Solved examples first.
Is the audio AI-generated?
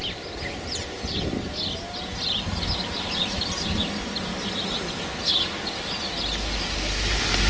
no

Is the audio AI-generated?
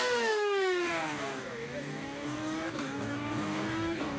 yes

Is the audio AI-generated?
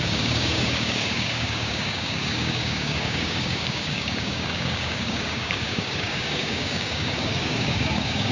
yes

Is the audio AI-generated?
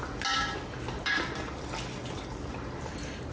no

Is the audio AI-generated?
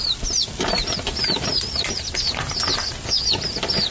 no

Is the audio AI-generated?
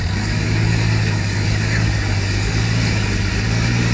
yes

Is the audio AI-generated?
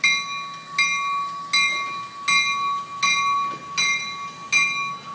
no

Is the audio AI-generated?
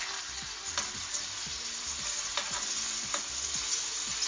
no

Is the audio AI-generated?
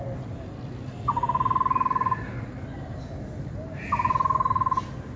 no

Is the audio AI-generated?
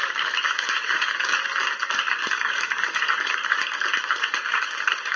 yes